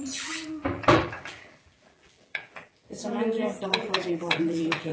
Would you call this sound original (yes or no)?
no